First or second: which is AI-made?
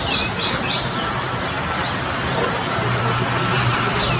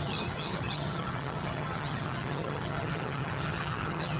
second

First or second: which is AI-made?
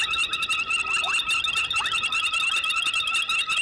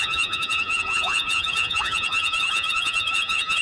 second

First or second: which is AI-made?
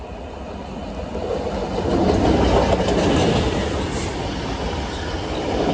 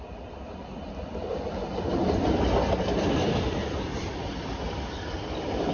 second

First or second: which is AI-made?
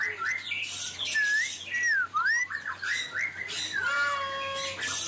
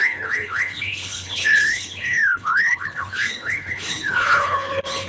second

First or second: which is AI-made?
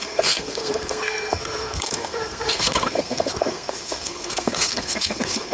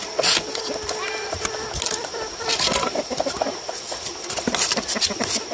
first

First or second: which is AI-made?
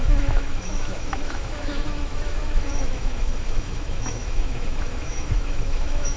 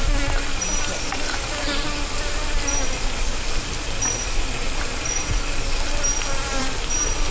first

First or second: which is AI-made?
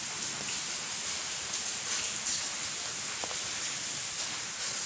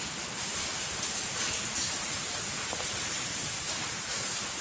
second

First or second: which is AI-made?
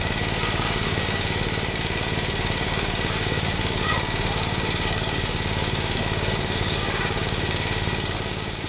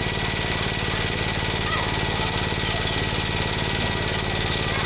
first